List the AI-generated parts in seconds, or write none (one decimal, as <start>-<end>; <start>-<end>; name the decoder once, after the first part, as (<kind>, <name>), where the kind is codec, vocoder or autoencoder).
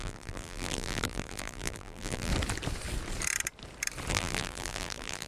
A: 0.0-2.3 (vocoder, BigVGAN v2); 4.1-5.3